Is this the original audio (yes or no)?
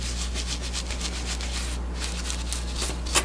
yes